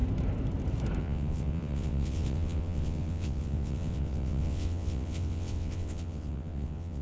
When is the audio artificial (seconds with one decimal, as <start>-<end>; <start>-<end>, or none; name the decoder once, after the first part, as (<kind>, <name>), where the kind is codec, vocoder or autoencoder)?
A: 1.0-7.0 (vocoder, WaveNeXt)